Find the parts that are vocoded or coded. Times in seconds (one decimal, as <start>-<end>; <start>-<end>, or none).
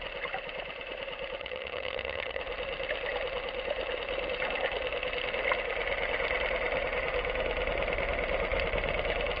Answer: 1.4-2.4